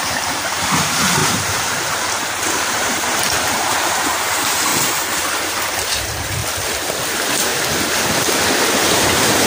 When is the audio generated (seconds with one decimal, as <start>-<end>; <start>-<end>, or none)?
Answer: 0.0-4.7; 5.4-6.4; 7.0-7.5; 8.9-9.5